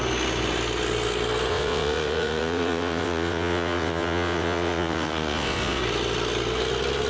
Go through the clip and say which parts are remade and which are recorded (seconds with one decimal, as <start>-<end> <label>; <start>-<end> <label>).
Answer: 0.0-1.5 recorded; 1.5-5.8 remade; 5.8-7.1 recorded